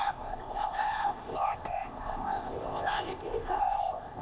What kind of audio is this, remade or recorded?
remade